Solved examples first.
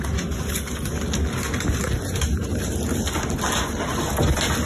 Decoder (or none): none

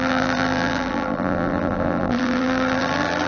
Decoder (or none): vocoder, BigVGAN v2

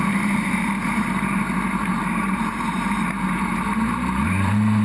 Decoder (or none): vocoder, BigVGAN v2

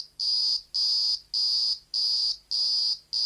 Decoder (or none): none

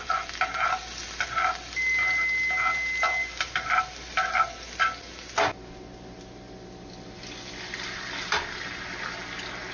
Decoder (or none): none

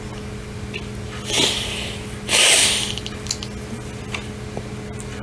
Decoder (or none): none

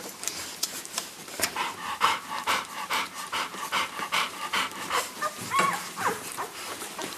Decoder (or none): vocoder, BigVGAN v2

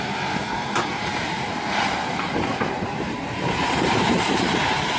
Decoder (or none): vocoder, BigVGAN v2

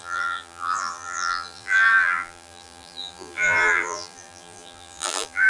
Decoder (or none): vocoder, BigVGAN v2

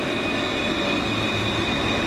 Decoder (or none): none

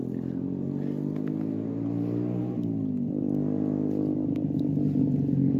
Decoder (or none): none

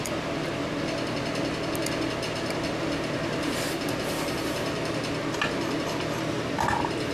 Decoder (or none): none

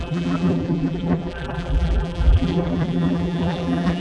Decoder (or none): vocoder, BigVGAN v2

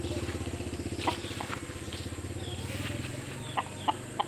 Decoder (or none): none